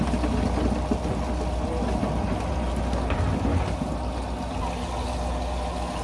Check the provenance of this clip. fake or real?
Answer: real